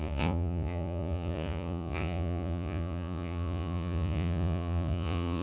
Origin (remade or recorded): remade